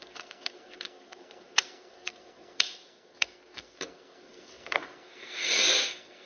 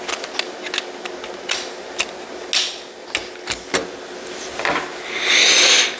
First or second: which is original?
second